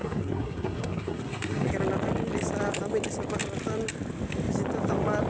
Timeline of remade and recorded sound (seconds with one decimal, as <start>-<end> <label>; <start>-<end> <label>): 0.0-1.7 remade; 1.7-5.3 recorded